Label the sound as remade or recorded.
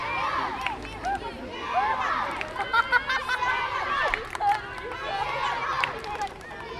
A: recorded